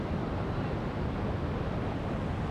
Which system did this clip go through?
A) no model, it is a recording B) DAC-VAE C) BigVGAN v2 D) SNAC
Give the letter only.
A